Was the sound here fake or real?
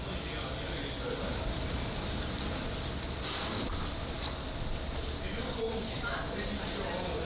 real